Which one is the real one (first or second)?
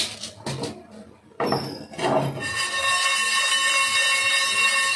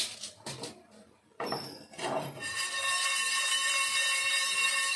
first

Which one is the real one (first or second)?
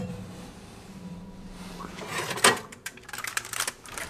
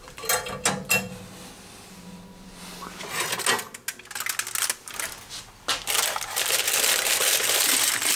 second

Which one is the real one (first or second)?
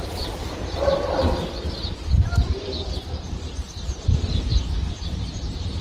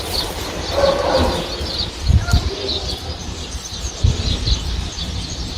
second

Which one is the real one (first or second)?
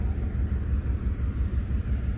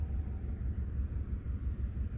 first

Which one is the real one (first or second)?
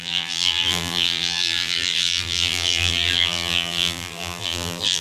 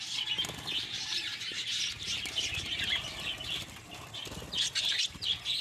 second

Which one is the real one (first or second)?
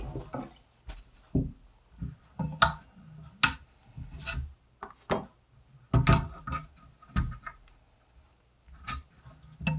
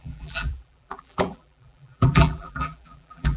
first